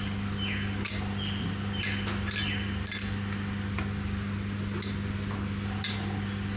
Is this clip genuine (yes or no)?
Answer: yes